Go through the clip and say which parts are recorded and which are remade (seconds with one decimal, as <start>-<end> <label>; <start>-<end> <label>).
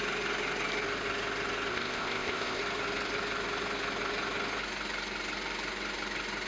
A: 0.0-1.7 recorded; 1.7-2.6 remade; 2.6-6.5 recorded